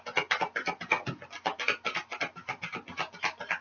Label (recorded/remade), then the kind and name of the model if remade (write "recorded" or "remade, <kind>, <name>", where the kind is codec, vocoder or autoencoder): recorded